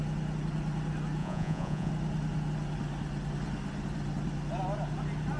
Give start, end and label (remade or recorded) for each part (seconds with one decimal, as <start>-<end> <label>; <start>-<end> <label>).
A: 0.0-1.2 recorded; 1.2-1.9 remade; 1.9-5.4 recorded